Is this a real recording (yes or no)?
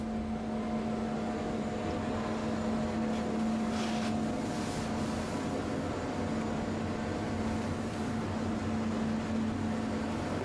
yes